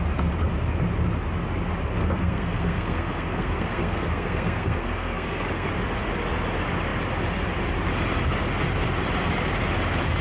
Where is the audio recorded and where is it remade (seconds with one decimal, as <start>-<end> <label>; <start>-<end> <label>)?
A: 0.0-2.0 recorded; 2.0-5.7 remade; 5.7-10.2 recorded